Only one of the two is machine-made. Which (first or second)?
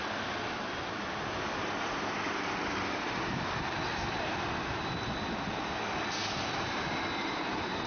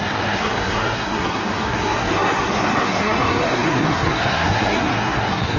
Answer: second